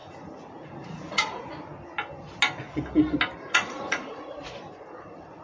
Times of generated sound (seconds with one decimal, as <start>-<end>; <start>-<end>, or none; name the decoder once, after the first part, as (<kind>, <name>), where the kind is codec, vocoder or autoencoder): 0.0-1.7 (vocoder, Vocos); 3.5-5.4